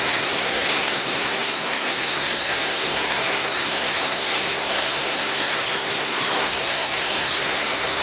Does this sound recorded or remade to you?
remade